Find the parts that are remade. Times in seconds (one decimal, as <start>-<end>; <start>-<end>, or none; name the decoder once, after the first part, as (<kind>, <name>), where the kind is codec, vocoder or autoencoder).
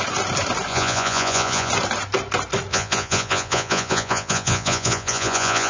0.7-1.7 (vocoder, Vocos); 2.7-5.7